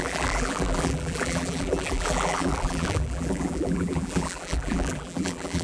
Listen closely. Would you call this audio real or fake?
fake